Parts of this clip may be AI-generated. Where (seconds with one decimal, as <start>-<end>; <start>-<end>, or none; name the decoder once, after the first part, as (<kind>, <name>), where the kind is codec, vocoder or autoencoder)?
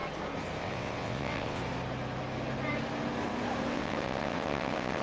0.6-1.6 (vocoder, WaveNeXt); 3.7-5.0